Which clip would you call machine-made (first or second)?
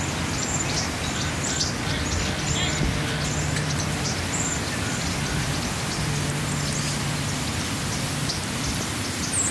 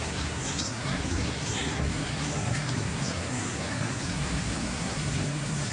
second